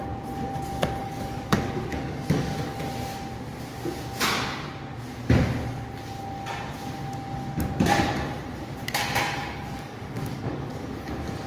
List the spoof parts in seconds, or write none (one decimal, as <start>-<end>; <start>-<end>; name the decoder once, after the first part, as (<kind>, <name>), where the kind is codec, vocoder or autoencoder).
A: 1.0-2.8 (codec, DAC); 9.4-11.1